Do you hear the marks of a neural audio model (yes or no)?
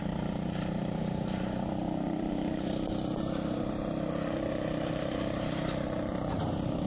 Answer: yes